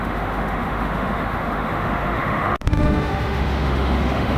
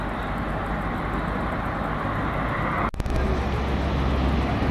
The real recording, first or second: second